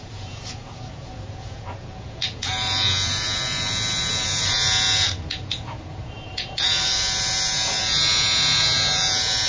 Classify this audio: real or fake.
fake